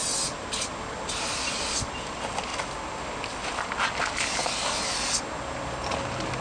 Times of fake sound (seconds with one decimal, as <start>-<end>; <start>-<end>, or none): none